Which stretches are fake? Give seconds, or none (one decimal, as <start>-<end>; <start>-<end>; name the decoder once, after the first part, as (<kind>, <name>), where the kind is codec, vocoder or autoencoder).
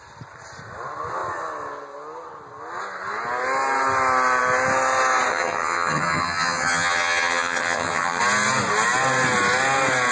5.3-8.2 (vocoder, HiFi-GAN)